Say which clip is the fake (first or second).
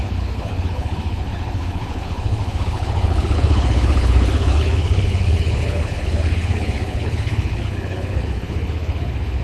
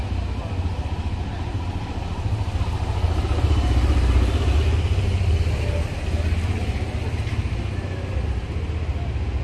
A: first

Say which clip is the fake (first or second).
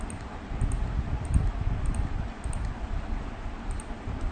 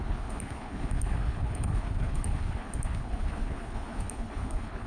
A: second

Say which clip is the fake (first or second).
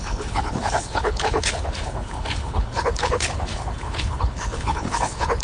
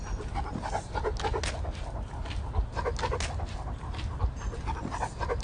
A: first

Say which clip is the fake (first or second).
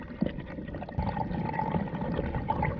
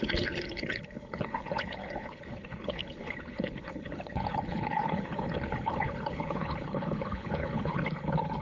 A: second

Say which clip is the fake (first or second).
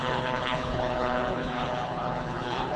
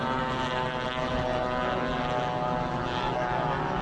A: first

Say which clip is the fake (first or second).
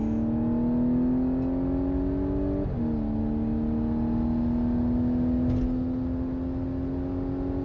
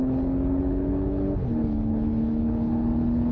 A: second